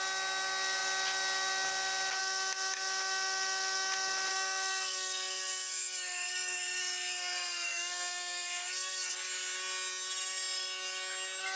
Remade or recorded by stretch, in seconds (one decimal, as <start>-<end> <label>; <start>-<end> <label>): 0.0-4.3 recorded; 4.3-9.1 remade; 9.1-11.6 recorded